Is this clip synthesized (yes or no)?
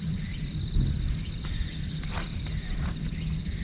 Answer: no